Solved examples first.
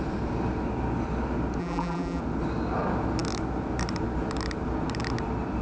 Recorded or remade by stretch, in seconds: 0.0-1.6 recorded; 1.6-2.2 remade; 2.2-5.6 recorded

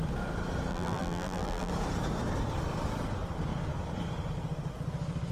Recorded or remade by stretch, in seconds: 0.0-0.7 recorded; 0.7-1.7 remade; 1.7-5.3 recorded

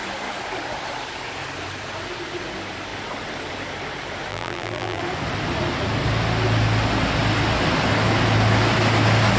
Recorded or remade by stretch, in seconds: 0.0-4.3 recorded; 4.3-5.0 remade; 5.0-9.4 recorded

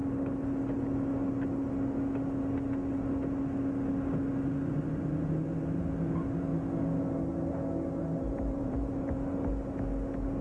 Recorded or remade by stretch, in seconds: 0.0-8.0 recorded; 8.0-9.5 remade; 9.5-10.4 recorded

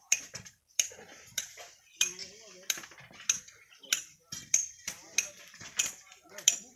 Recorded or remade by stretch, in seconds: 0.0-2.2 remade; 2.2-3.4 recorded; 3.4-5.0 remade; 5.0-5.8 recorded; 5.8-6.8 remade

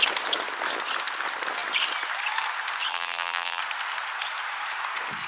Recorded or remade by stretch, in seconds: 0.0-2.9 recorded; 2.9-3.6 remade; 3.6-5.3 recorded